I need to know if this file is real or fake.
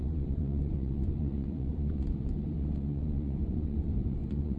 fake